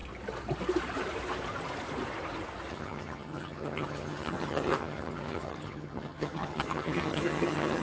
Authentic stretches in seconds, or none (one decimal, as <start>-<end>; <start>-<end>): 0.0-2.7